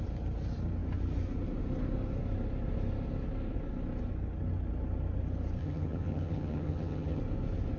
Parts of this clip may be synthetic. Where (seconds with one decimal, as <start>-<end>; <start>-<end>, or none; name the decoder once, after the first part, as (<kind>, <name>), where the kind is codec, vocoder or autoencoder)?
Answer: 5.6-7.2 (vocoder, HiFi-GAN)